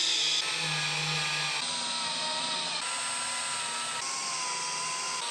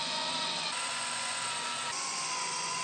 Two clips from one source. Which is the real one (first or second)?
first